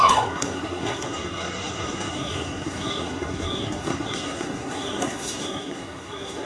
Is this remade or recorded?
remade